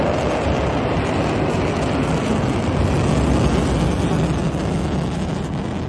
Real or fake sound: real